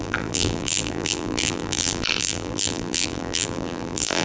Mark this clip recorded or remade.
remade